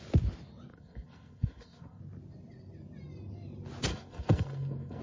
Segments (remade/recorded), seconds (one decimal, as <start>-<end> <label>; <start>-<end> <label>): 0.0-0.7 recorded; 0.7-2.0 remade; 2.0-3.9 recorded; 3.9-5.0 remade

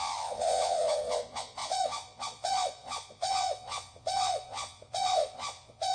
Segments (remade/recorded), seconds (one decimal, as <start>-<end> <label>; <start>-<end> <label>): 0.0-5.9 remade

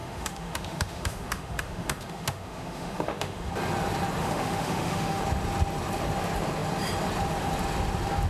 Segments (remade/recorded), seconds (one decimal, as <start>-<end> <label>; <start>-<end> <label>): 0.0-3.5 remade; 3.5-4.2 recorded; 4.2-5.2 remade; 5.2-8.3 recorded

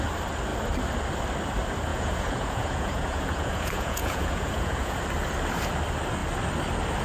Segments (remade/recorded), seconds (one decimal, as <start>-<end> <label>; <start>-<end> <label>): 0.0-1.9 recorded; 1.9-5.0 remade; 5.0-7.0 recorded

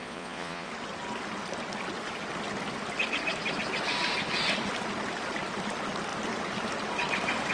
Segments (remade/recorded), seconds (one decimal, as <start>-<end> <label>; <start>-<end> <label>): 0.0-0.7 remade; 0.7-7.5 recorded